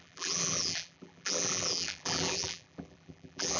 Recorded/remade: remade